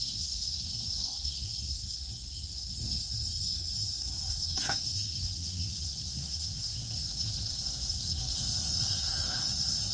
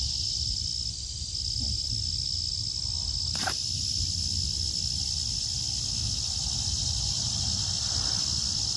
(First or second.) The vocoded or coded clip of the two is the first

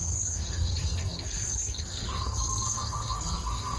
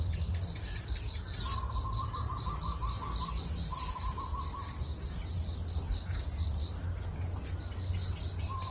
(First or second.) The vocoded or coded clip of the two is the first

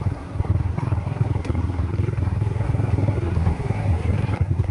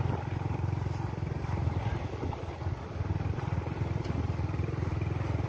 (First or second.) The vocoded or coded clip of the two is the first